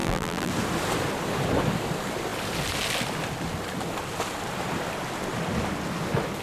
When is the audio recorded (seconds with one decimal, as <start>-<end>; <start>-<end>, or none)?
0.5-6.4